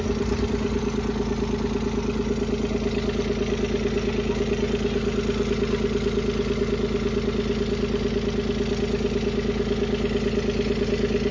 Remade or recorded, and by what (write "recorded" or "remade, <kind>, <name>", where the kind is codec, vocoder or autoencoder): recorded